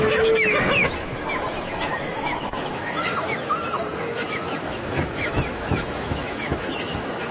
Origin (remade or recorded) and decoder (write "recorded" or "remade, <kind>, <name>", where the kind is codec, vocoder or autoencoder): remade, autoencoder, DAC-VAE